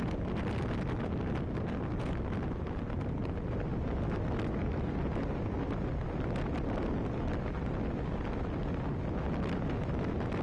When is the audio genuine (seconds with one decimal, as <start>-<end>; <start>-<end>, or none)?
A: 0.0-10.4